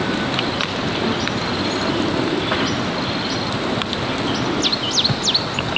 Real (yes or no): yes